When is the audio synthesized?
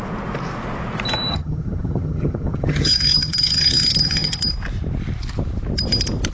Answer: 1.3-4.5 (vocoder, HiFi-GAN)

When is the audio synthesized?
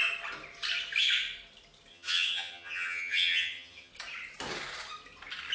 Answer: 1.9-3.9 (vocoder, HiFi-GAN)